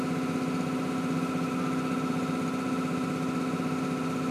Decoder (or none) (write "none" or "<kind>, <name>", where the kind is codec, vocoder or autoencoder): none